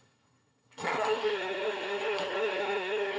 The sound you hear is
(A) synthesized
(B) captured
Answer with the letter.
A